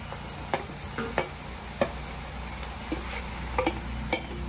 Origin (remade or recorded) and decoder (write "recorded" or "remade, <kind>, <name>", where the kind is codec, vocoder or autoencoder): recorded